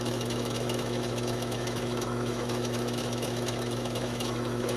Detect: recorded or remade remade